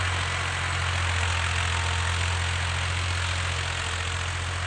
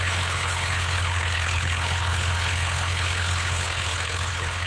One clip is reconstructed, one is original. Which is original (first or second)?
first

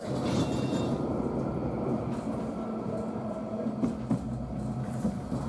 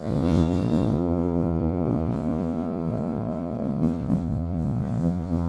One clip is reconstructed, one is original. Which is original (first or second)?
first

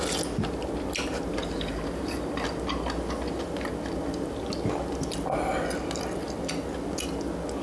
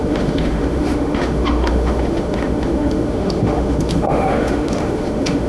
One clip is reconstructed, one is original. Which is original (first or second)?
first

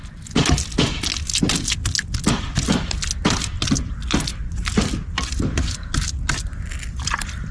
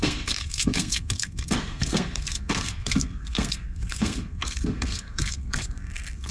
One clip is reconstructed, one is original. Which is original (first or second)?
first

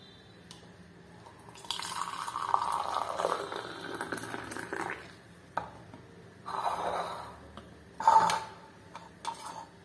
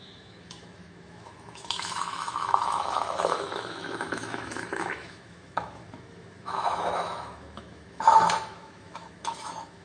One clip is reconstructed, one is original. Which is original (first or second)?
first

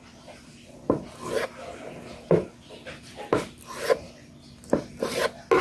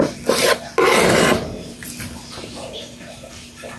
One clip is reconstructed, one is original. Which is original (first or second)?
first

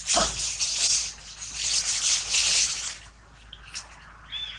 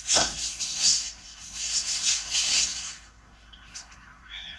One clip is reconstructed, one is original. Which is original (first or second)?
first